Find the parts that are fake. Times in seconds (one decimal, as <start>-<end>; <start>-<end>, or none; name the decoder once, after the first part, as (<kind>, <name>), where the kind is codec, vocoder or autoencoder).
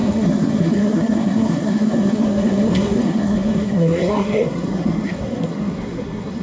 0.0-6.4 (codec, SNAC)